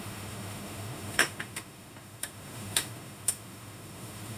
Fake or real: fake